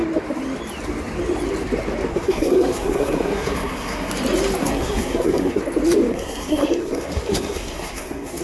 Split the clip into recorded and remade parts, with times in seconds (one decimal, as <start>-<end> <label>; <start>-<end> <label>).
0.0-2.1 recorded; 2.1-4.1 remade; 4.1-4.6 recorded; 4.6-5.6 remade; 5.6-6.1 recorded; 6.1-8.4 remade